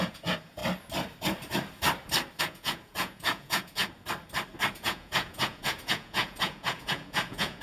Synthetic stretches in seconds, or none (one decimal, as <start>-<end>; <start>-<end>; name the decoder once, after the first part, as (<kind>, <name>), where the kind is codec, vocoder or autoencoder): 0.0-0.6 (vocoder, Vocos); 2.4-3.8; 4.7-7.6